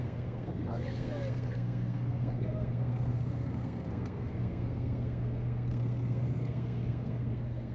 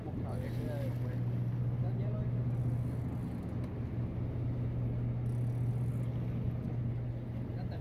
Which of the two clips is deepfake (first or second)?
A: first